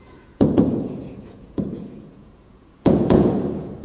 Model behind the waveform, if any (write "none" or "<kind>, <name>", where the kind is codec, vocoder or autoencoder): vocoder, Vocos